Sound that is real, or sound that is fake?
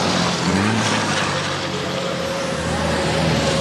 real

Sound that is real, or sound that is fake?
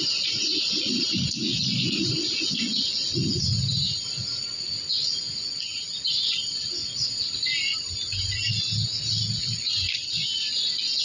real